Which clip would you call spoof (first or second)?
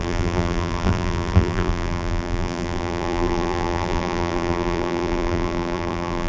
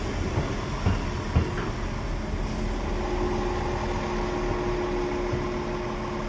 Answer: first